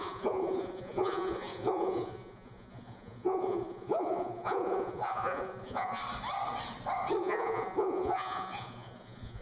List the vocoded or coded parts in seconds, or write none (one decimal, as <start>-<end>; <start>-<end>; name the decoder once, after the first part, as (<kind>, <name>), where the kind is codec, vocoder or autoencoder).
0.0-6.0 (vocoder, Vocos); 7.2-9.4

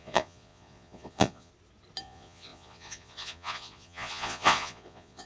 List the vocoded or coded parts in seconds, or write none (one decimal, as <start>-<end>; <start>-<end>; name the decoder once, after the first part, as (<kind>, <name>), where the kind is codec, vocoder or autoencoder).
0.0-1.5 (vocoder, Vocos); 2.0-5.3

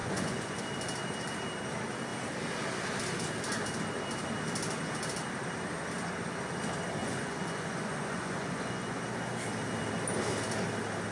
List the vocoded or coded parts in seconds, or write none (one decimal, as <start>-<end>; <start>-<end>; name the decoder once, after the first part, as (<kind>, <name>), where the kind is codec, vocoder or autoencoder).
0.0-0.6 (vocoder, Vocos); 7.0-9.0

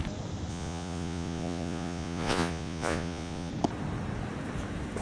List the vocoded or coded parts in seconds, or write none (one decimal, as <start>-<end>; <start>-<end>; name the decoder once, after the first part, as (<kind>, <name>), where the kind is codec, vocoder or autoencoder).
0.5-3.5 (vocoder, Vocos)

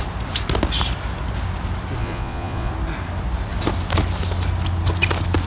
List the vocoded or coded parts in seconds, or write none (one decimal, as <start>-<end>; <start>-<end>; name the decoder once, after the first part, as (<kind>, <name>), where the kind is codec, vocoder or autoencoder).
2.0-2.7 (vocoder, Vocos)

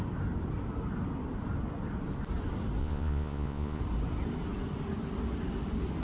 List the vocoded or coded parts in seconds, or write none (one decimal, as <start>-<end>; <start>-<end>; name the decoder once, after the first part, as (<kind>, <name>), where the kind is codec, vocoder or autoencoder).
2.8-3.8 (vocoder, Vocos)

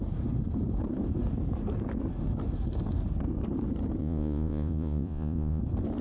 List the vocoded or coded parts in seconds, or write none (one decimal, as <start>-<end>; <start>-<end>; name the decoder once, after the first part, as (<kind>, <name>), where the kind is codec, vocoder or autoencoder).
4.0-5.6 (vocoder, Vocos)